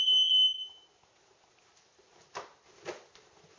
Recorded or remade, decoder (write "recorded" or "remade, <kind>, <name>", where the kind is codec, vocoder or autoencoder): recorded